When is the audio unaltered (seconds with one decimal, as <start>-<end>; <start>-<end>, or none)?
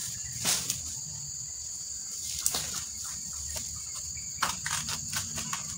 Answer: 0.0-5.8